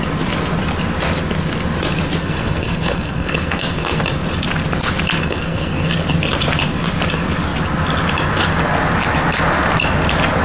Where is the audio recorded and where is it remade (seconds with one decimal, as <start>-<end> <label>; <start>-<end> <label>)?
0.0-2.2 recorded; 2.2-4.0 remade; 4.0-5.2 recorded; 5.2-5.9 remade; 5.9-10.4 recorded

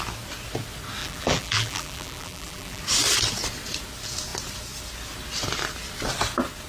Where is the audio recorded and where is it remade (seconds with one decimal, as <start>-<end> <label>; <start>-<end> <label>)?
0.0-1.0 recorded; 1.0-2.8 remade; 2.8-6.7 recorded

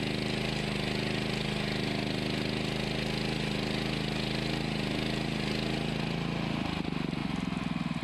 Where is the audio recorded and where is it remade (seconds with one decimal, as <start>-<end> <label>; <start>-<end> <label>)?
0.0-8.0 recorded

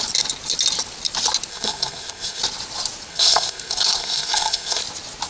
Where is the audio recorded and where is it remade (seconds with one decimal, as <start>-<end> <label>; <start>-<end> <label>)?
0.0-1.5 recorded; 1.5-2.4 remade; 2.4-3.1 recorded; 3.1-4.8 remade; 4.8-5.3 recorded

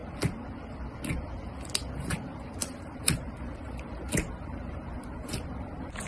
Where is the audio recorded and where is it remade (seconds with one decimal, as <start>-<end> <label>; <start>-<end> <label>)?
0.0-2.1 recorded; 2.1-6.1 remade